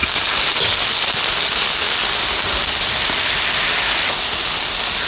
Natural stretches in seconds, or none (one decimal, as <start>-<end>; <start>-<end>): 0.0-5.1